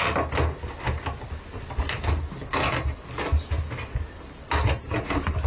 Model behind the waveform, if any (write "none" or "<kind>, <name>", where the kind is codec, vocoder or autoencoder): none